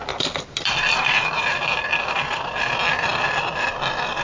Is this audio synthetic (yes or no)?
no